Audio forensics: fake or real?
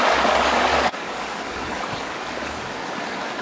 fake